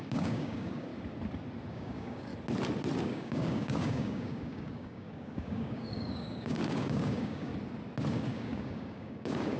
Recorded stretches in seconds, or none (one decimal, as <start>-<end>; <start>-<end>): 0.9-1.7; 2.3-3.0; 7.5-8.1